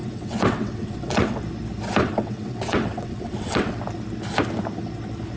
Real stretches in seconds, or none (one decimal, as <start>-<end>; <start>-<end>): 1.4-2.0; 3.8-5.4